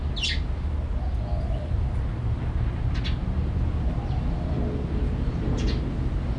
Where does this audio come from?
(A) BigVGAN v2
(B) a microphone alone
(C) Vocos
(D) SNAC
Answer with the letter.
B